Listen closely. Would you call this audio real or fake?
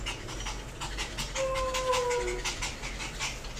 real